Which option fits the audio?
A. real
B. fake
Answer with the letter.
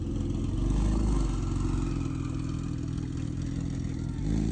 A